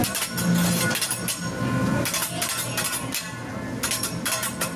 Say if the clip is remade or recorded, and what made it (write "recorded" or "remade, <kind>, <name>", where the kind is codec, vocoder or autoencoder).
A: recorded